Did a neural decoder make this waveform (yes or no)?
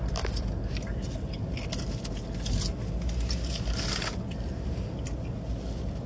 no